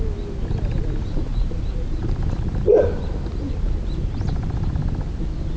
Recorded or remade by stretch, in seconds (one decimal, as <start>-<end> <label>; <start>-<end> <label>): 0.0-1.3 recorded; 1.3-4.7 remade; 4.7-5.6 recorded